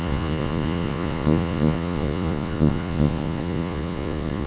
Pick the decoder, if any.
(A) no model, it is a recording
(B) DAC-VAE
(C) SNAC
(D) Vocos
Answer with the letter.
D